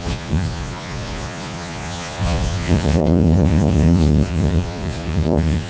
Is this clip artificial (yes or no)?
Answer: yes